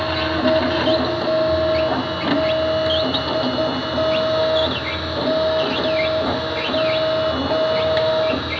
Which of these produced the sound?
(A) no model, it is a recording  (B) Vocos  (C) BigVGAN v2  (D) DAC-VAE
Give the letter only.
A